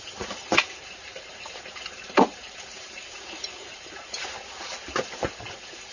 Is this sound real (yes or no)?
no